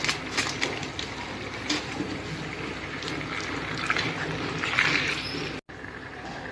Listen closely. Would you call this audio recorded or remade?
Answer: recorded